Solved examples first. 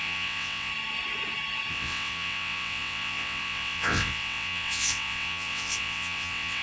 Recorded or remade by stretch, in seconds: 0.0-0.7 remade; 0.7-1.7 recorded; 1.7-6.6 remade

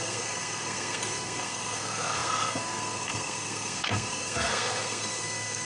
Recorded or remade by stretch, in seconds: 0.0-5.6 remade

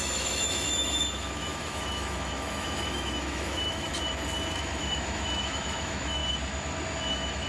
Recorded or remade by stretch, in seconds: 0.0-3.9 remade; 3.9-4.5 recorded; 4.5-6.2 remade; 6.2-7.1 recorded; 7.1-7.5 remade

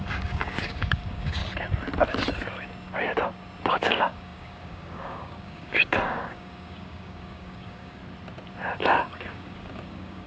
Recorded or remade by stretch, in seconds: 0.0-1.4 remade; 1.4-3.7 recorded; 3.7-8.0 remade; 8.0-9.0 recorded; 9.0-10.3 remade